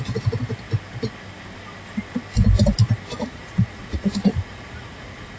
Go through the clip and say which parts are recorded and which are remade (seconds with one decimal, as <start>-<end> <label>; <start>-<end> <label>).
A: 0.0-3.2 recorded; 3.2-5.4 remade